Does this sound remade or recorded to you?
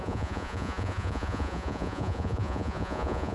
remade